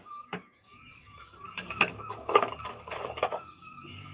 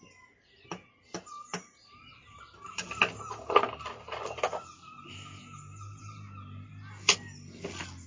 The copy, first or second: first